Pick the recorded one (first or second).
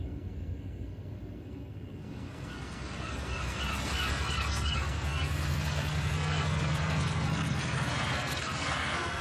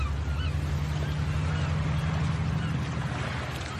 second